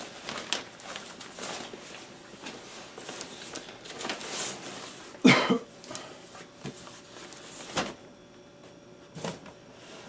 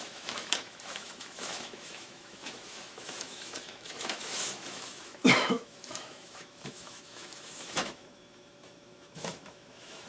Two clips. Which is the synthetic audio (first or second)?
second